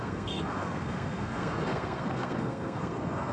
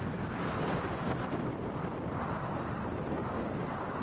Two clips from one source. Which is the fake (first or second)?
first